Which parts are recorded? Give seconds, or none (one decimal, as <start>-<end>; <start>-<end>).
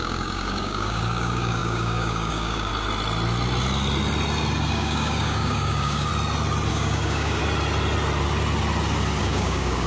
2.7-4.7; 6.1-6.7; 7.4-9.2